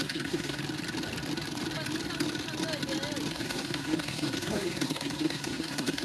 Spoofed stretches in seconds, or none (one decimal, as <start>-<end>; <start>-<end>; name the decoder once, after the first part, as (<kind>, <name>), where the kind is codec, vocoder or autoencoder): 0.0-0.6 (codec, SNAC); 3.3-6.0